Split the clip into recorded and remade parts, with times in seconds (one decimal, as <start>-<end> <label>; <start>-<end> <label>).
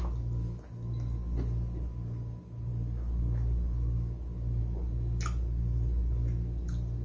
0.0-7.0 recorded